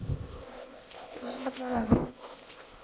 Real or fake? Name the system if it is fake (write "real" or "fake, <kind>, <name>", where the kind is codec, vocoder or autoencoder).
fake, codec, ZipCodec